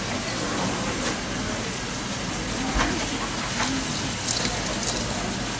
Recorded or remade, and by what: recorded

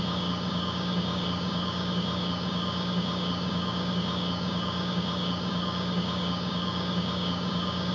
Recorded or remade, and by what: remade, codec, DAC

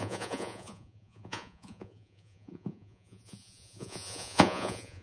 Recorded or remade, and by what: remade, vocoder, Vocos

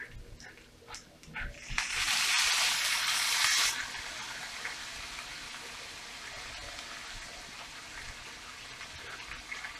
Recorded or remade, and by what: recorded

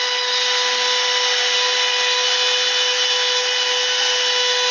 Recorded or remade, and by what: recorded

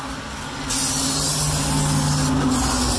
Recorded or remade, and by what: recorded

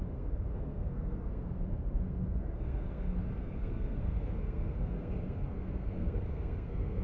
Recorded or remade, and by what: remade, codec, SNAC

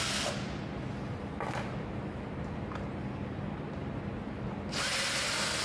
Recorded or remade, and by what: recorded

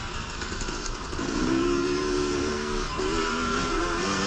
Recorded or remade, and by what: remade, codec, SNAC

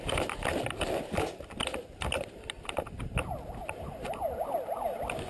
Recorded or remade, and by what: recorded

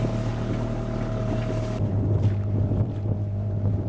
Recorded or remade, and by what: recorded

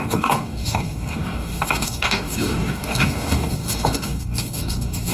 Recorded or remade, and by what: remade, codec, DAC